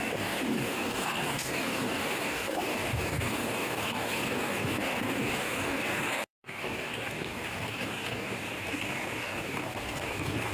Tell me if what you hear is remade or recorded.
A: remade